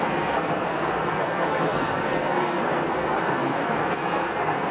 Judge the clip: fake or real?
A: fake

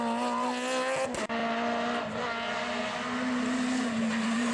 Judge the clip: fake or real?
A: real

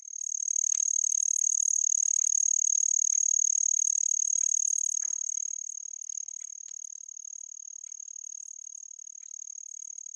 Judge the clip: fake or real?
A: real